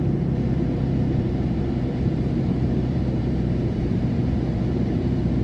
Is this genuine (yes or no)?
no